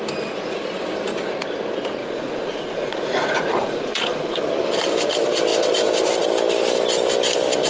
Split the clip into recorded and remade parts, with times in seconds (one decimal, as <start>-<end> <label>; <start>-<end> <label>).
0.0-2.0 recorded; 2.0-4.4 remade; 4.4-7.7 recorded